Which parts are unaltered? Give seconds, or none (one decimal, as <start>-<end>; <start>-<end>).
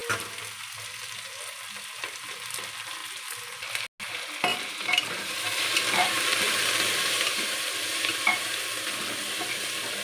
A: 0.0-4.5; 8.7-10.0